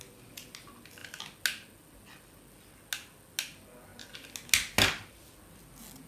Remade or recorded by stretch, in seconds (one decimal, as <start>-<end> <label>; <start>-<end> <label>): 0.0-6.1 recorded